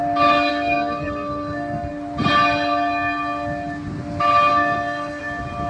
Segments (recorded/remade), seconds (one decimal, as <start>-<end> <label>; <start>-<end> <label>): 0.0-0.5 recorded; 0.5-1.9 remade; 1.9-4.5 recorded; 4.5-5.2 remade; 5.2-5.7 recorded